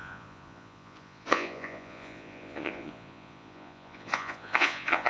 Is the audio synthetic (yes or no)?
yes